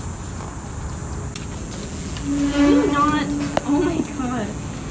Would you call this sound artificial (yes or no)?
no